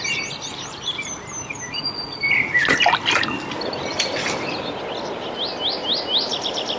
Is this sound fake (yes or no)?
no